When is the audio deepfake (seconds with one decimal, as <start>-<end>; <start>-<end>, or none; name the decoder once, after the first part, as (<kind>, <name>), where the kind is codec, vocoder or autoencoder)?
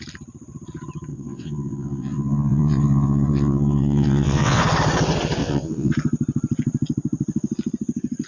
1.1-4.6 (vocoder, WaveNeXt); 5.4-5.9